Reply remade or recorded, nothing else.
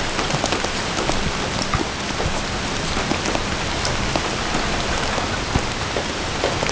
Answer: recorded